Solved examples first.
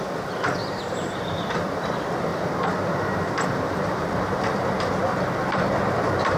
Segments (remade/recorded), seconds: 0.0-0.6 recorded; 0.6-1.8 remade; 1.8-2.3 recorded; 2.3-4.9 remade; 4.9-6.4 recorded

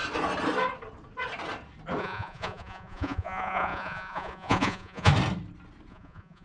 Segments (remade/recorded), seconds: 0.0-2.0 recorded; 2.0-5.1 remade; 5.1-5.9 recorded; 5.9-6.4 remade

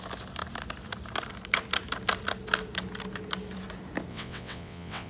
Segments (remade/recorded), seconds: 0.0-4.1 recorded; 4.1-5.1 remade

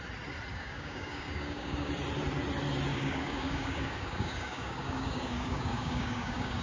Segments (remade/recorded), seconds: 0.0-0.5 recorded; 0.5-1.9 remade; 1.9-2.9 recorded; 2.9-6.6 remade

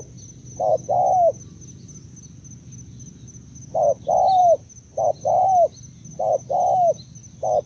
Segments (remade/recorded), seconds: 0.0-7.7 recorded

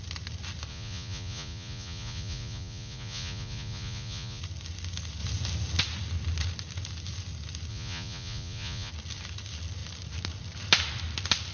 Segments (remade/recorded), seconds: 0.0-0.7 recorded; 0.7-4.4 remade; 4.4-7.7 recorded; 7.7-8.9 remade; 8.9-11.5 recorded